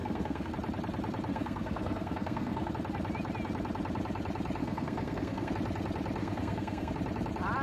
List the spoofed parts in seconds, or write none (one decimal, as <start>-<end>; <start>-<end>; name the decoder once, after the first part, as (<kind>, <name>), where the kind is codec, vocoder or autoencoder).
0.0-0.5 (codec, SNAC); 1.3-2.7; 4.6-5.5; 6.2-6.9

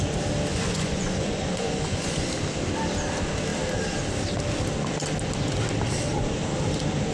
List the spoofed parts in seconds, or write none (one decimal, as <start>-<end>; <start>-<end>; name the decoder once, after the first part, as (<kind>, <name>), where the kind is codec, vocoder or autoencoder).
0.5-2.3 (vocoder, Vocos)

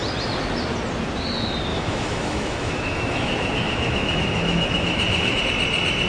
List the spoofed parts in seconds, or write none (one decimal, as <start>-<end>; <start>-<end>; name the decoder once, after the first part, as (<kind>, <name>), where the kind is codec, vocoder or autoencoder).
1.7-5.4 (autoencoder, DAC-VAE)

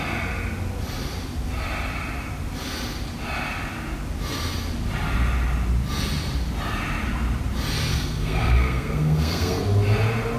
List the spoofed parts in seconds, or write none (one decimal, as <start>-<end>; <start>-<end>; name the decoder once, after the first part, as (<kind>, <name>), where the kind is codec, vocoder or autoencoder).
7.9-9.6 (codec, SNAC)

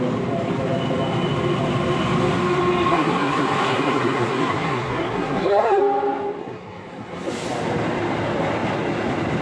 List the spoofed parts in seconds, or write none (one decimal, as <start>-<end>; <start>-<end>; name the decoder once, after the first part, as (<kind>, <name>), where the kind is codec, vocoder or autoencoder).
2.9-5.8 (codec, SNAC); 6.4-7.3

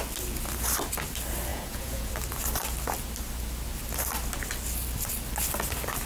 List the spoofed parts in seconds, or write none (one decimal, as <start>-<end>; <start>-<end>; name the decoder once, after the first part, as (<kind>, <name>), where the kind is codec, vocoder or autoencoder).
1.5-2.1 (vocoder, Vocos)

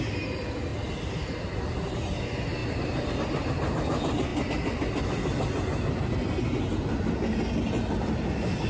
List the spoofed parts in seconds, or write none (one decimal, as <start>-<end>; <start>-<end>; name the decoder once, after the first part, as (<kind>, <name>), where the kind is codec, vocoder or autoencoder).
none